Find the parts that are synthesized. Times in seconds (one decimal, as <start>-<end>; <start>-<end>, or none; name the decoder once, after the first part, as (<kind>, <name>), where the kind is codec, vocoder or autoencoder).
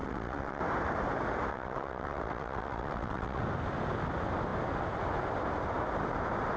0.0-0.6 (vocoder, WaveNeXt); 1.5-3.4